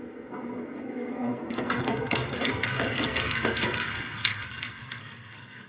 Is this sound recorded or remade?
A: remade